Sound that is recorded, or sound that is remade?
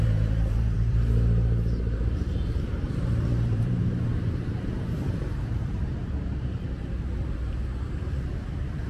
remade